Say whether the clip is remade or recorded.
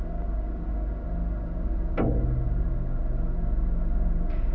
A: recorded